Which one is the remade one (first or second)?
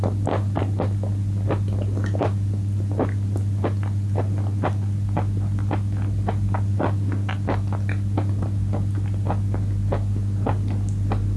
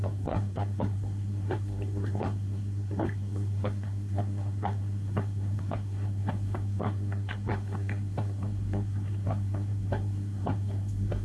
second